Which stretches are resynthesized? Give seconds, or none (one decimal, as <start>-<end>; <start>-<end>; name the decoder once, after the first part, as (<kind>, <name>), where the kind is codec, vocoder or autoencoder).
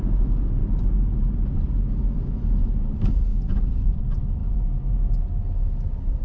3.3-4.0 (vocoder, Vocos); 4.4-5.2